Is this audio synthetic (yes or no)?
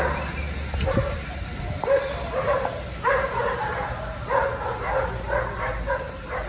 no